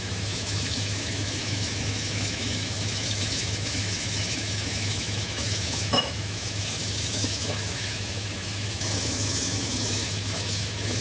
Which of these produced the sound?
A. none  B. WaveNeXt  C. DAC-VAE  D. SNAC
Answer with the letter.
C